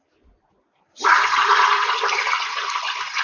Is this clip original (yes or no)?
yes